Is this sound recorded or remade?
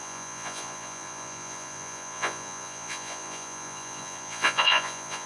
remade